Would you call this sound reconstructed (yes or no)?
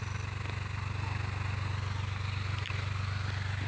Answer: no